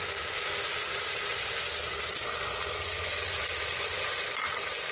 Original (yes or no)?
yes